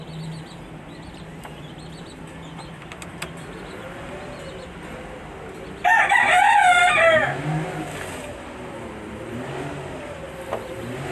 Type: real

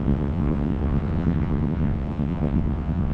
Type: fake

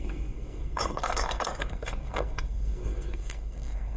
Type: fake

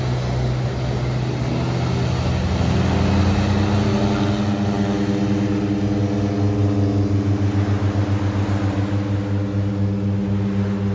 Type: real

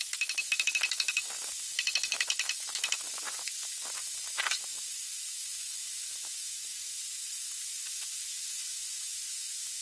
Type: fake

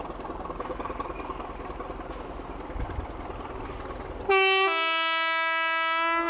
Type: real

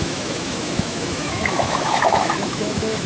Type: fake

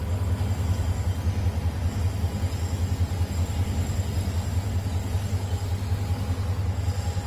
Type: real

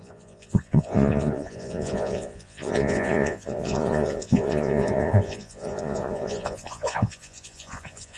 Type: fake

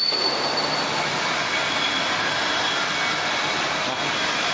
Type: real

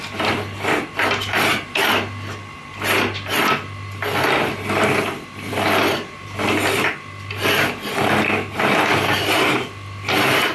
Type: fake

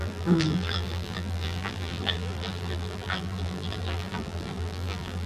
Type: fake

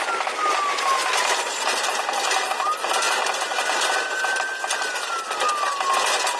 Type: real